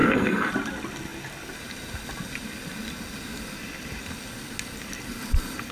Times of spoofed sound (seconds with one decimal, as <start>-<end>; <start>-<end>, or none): 0.0-0.5